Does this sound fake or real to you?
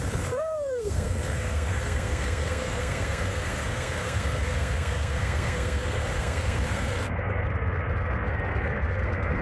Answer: fake